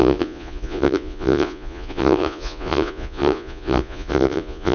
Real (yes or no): no